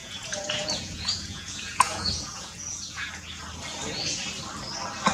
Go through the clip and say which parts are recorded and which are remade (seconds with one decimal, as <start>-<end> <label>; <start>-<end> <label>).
0.0-3.1 remade; 3.1-5.1 recorded